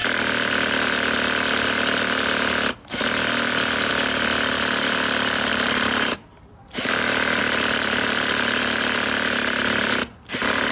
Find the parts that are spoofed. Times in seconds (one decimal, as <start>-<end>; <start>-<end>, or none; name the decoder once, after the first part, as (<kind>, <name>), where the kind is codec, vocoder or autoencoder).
5.5-7.4 (vocoder, BigVGAN v2)